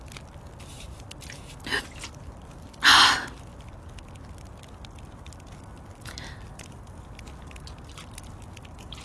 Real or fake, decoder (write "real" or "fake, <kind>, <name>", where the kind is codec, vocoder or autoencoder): real